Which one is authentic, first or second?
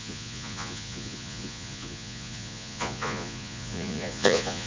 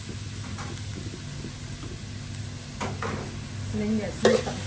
second